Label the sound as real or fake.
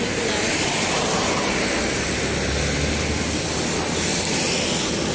real